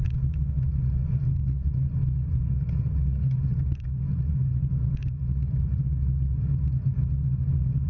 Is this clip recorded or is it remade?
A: recorded